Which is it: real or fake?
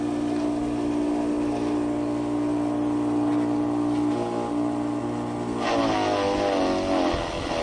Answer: real